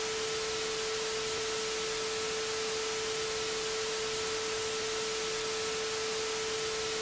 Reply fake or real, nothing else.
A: real